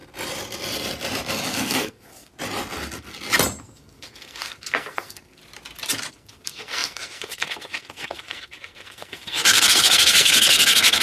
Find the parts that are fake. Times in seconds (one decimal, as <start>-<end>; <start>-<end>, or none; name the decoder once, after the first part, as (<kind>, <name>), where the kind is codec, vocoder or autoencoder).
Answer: 1.5-2.3 (codec, SNAC); 3.6-5.4; 6.1-11.0

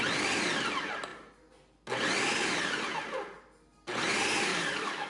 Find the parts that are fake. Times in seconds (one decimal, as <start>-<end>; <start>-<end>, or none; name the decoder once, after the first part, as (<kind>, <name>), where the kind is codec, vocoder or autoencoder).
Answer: 4.5-5.1 (codec, DAC)

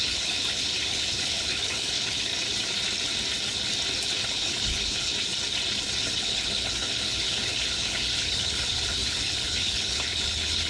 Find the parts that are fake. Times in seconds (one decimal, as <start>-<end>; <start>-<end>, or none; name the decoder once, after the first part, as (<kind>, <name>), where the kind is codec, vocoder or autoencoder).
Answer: 0.0-2.3 (codec, HILCodec); 4.3-5.1; 6.0-10.7